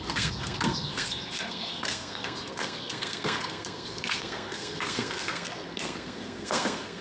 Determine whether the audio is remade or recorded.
remade